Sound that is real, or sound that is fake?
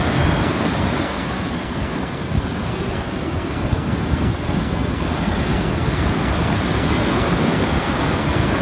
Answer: fake